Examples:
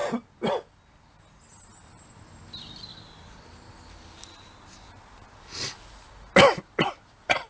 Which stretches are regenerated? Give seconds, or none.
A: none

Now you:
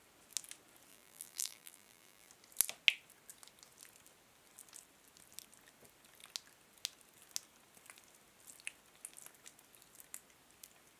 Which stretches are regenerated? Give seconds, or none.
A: 0.9-2.3 (vocoder, BigVGAN v2)

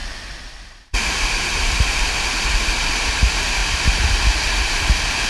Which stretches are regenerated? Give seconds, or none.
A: 0.0-3.2 (vocoder, BigVGAN v2); 3.6-4.2

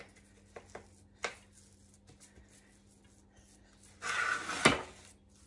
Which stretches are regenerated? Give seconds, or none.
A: none

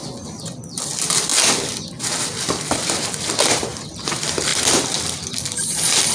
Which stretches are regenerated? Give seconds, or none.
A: 0.7-1.3 (vocoder, BigVGAN v2); 3.2-6.1

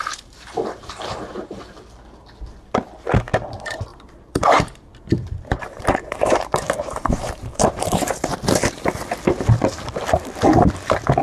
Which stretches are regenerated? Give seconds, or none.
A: 0.0-1.6 (vocoder, BigVGAN v2); 3.9-8.3

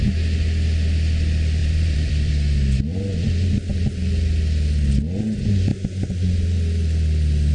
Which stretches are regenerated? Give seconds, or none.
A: 1.6-2.3 (vocoder, BigVGAN v2)